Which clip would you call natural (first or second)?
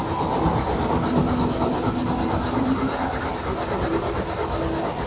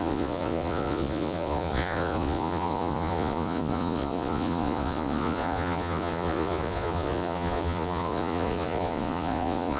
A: first